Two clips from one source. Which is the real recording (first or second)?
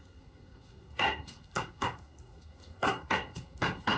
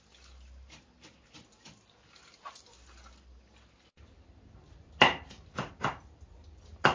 second